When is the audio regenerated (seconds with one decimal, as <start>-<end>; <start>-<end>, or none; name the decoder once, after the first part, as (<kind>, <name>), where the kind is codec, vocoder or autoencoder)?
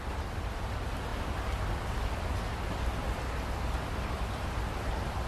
1.1-4.3 (vocoder, BigVGAN v2)